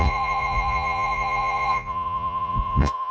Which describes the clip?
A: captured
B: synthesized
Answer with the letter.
B